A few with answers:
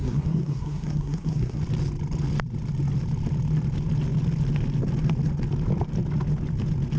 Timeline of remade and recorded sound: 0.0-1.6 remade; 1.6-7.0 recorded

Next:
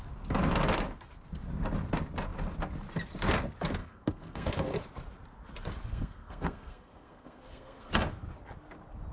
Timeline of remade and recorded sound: 0.0-3.8 recorded; 3.8-4.9 remade; 4.9-5.9 recorded; 5.9-7.9 remade; 7.9-9.1 recorded

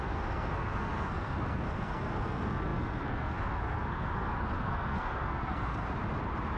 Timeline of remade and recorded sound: 0.0-5.8 remade; 5.8-6.6 recorded

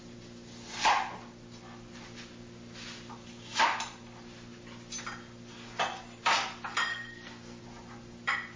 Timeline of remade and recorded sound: 0.0-6.9 recorded; 6.9-7.6 remade; 7.6-8.6 recorded

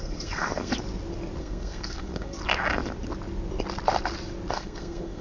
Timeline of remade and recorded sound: 0.0-0.7 remade; 0.7-1.4 recorded; 1.4-2.4 remade; 2.4-4.5 recorded; 4.5-5.2 remade

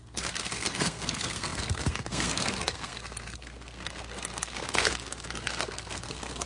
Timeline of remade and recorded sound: 0.0-6.5 remade

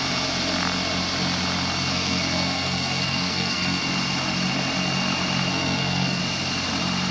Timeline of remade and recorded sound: 0.0-1.9 recorded; 1.9-3.8 remade; 3.8-5.5 recorded; 5.5-6.2 remade; 6.2-7.1 recorded

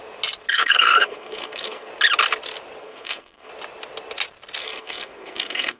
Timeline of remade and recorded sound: 0.0-0.5 recorded; 0.5-1.9 remade; 1.9-2.8 recorded; 2.8-3.5 remade; 3.5-4.6 recorded; 4.6-5.8 remade